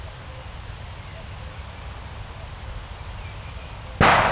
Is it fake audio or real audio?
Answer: real